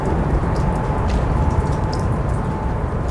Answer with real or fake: fake